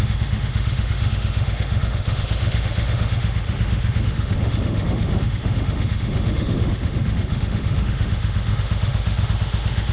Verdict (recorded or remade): remade